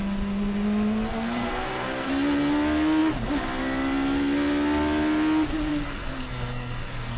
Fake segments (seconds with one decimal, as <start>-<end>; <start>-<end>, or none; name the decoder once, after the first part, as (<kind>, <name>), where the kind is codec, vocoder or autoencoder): 1.1-2.1 (codec, SNAC); 5.7-7.2